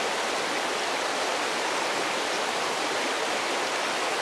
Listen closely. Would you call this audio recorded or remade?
recorded